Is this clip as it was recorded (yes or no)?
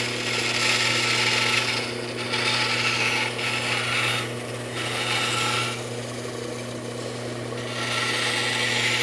yes